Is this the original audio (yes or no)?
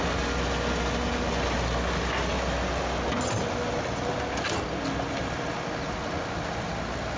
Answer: yes